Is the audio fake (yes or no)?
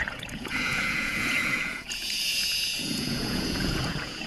yes